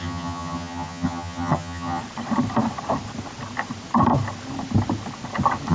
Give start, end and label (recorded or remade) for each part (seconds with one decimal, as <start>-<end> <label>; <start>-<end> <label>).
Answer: 0.0-2.0 remade; 2.0-5.7 recorded